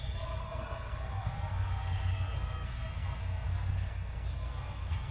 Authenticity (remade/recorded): remade